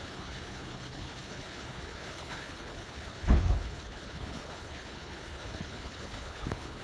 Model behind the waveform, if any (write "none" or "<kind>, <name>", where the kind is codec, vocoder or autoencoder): codec, HILCodec